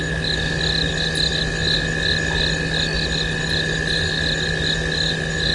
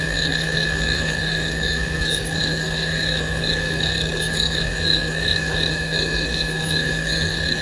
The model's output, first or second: second